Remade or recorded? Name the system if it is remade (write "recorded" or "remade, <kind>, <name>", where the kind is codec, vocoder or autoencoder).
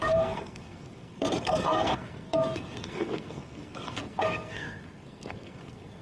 remade, codec, SNAC